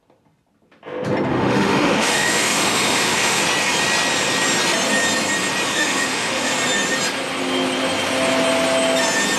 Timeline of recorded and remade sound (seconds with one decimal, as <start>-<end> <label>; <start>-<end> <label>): 0.0-1.3 recorded; 1.3-3.4 remade; 3.4-5.7 recorded; 5.7-6.5 remade; 6.5-9.4 recorded